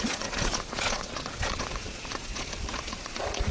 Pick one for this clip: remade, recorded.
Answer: remade